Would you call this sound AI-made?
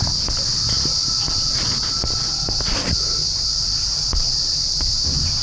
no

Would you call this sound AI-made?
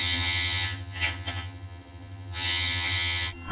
yes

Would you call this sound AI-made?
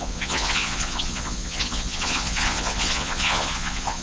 yes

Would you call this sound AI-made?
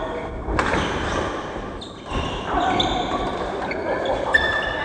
yes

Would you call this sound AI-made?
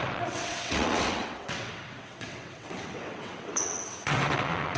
yes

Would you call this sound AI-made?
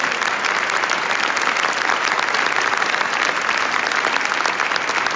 no